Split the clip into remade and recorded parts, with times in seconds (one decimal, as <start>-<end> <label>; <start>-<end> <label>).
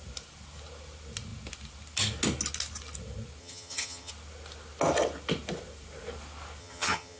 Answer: 0.0-3.4 recorded; 3.4-4.1 remade; 4.1-6.6 recorded; 6.6-7.2 remade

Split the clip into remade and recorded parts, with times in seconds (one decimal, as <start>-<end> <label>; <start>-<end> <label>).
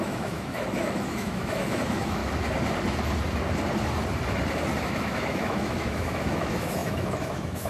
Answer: 0.0-2.2 remade; 2.2-4.8 recorded; 4.8-7.7 remade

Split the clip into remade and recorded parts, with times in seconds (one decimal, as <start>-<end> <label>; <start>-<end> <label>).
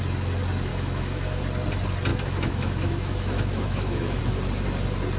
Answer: 0.0-0.7 recorded; 0.7-1.4 remade; 1.4-2.1 recorded; 2.1-4.2 remade; 4.2-5.2 recorded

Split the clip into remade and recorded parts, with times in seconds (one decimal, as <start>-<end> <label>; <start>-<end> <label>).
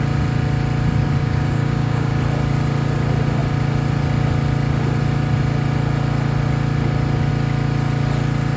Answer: 0.0-1.2 recorded; 1.2-2.1 remade; 2.1-8.6 recorded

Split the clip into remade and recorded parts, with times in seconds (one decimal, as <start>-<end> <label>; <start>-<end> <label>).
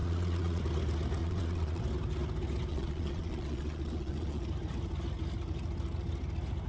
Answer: 0.0-0.6 remade; 0.6-1.2 recorded; 1.2-1.8 remade; 1.8-2.7 recorded; 2.7-4.4 remade; 4.4-6.7 recorded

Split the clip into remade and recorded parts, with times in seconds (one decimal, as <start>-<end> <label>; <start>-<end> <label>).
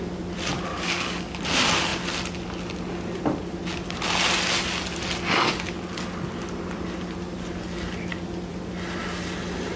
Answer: 0.0-0.7 recorded; 0.7-1.4 remade; 1.4-9.8 recorded